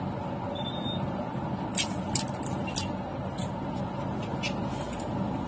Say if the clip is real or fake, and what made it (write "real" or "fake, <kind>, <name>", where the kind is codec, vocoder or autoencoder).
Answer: real